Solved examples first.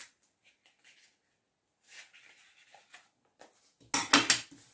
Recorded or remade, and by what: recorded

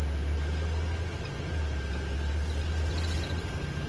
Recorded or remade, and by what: recorded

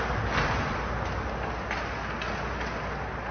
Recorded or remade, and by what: recorded